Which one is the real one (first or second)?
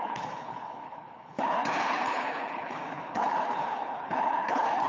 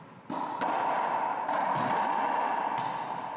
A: second